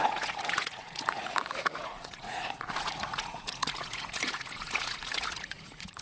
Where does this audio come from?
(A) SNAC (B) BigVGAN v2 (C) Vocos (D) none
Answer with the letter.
C